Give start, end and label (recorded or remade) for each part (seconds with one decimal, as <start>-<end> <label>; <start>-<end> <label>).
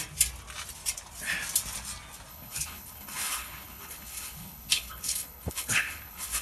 0.0-2.3 recorded; 2.3-6.4 remade